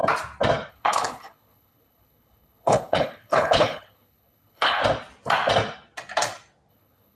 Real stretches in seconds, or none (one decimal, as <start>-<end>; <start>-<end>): 0.0-0.7; 4.8-6.7